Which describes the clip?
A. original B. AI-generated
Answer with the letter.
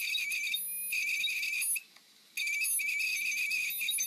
A